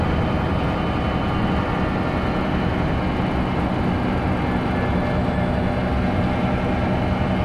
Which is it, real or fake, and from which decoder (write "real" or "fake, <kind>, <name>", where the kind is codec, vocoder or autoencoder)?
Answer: real